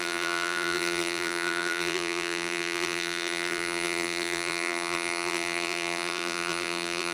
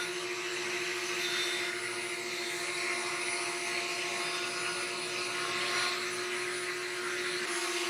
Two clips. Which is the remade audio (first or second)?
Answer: first